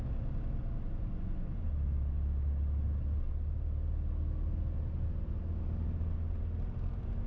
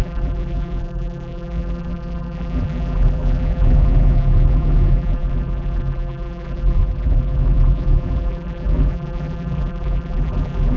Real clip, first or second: first